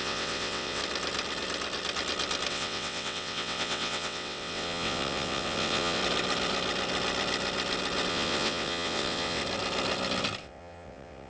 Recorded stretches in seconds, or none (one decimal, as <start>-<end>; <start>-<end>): 0.8-2.5; 6.0-8.1; 9.4-10.4

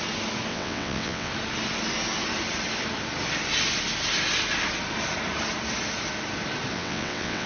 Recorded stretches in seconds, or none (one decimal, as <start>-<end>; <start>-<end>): 0.0-0.5; 1.3-6.7

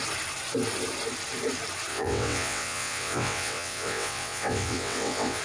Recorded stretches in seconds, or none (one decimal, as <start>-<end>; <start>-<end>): 0.0-1.9